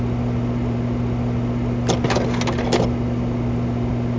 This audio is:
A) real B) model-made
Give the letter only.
A